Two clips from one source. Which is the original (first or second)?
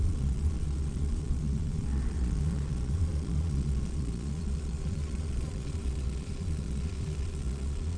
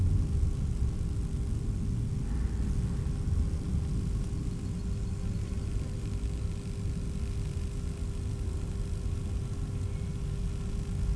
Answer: second